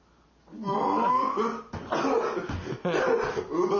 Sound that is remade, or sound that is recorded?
recorded